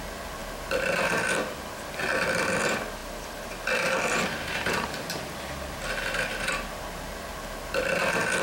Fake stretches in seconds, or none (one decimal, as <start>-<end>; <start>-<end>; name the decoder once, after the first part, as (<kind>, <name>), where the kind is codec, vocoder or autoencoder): none